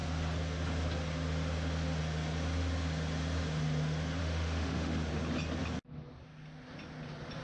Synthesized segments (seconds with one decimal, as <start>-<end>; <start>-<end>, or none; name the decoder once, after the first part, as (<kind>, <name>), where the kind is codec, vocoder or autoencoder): 4.2-5.1 (autoencoder, DAC-VAE)